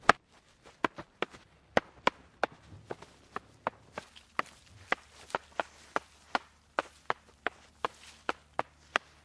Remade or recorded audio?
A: recorded